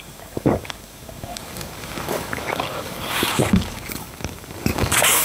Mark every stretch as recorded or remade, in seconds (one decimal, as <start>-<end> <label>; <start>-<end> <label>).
0.0-5.2 remade